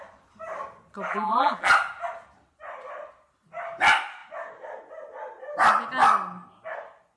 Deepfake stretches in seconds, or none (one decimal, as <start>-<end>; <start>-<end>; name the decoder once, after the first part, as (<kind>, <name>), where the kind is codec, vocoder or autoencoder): 1.1-1.7 (vocoder, BigVGAN v2)